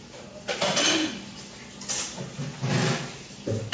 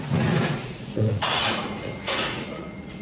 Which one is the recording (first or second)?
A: first